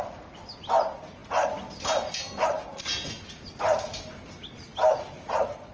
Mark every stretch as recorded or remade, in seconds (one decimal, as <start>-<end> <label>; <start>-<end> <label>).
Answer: 0.0-5.7 recorded